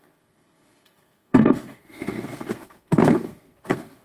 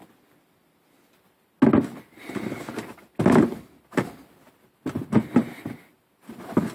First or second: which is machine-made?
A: first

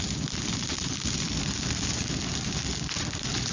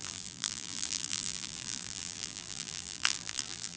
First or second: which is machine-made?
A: second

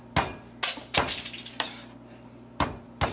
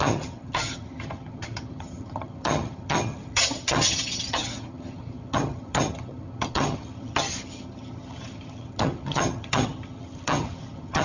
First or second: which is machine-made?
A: second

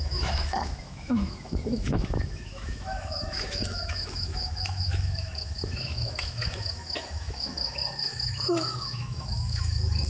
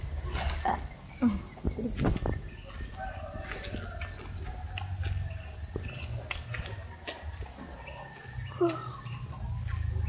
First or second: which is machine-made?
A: first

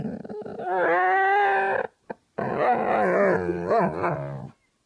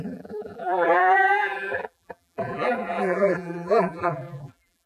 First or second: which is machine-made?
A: second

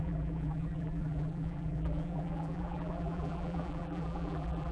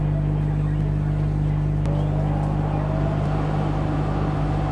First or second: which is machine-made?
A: first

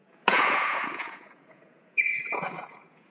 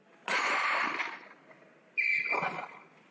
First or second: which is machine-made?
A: first